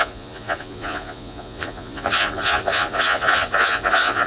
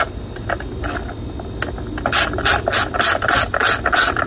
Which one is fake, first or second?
first